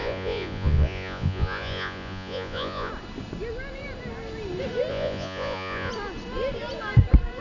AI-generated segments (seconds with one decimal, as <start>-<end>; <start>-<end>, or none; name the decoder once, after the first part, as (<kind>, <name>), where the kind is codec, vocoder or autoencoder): 0.0-2.9 (vocoder, Vocos); 4.9-5.9